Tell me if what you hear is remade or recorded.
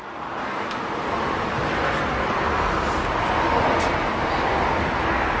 recorded